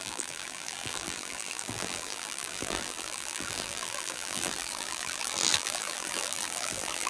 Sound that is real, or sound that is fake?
fake